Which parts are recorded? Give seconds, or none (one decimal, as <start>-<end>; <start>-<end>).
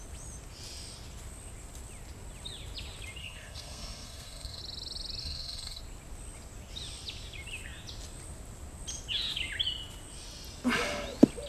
0.0-3.2; 4.6-5.2; 5.8-11.5